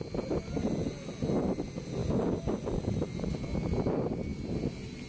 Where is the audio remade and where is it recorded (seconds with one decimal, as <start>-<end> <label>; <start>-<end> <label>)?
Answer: 0.0-5.1 recorded